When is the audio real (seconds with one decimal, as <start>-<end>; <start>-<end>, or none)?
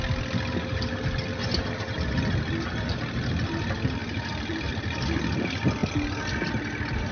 0.0-1.6; 2.1-4.0; 4.7-7.1